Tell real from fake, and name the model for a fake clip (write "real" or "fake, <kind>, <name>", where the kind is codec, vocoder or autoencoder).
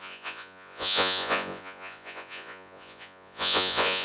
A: fake, vocoder, Vocos